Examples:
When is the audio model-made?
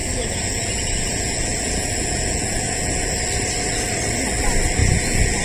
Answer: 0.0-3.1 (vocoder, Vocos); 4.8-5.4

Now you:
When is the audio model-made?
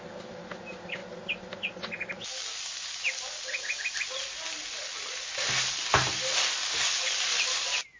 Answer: none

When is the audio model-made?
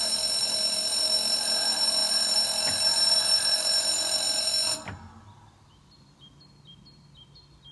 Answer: none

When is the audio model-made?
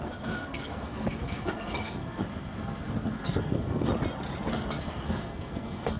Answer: 0.0-3.9 (codec, SNAC); 4.5-6.0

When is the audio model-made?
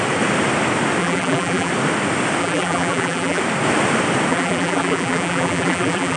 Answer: 1.0-1.7 (vocoder, BigVGAN v2); 2.4-3.4; 4.3-6.2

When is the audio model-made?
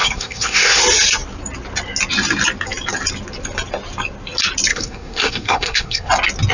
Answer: 0.0-0.8 (codec, SNAC); 4.7-6.1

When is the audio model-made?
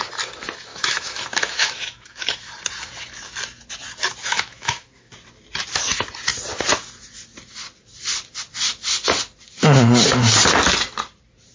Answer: 0.7-2.5 (autoencoder, DAC-VAE); 4.2-5.1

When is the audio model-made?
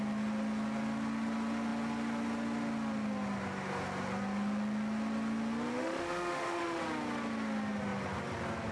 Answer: 5.7-6.8 (autoencoder, DAC-VAE)